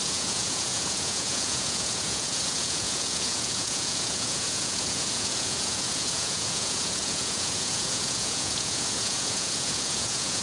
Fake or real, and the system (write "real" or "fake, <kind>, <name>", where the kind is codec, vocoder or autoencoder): fake, vocoder, Vocos